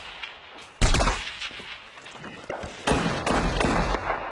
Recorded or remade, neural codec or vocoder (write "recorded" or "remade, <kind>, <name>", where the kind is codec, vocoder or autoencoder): recorded